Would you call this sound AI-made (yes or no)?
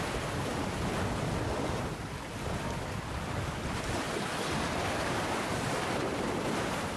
no